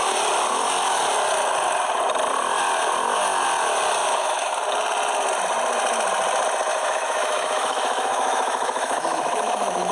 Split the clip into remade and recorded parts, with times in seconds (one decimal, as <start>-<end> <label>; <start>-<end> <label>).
0.0-4.0 recorded; 4.0-4.5 remade; 4.5-6.7 recorded; 6.7-9.9 remade